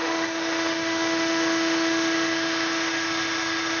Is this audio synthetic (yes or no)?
yes